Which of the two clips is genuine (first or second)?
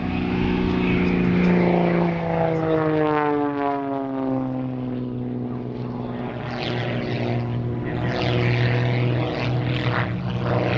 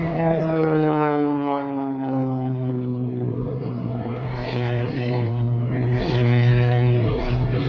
first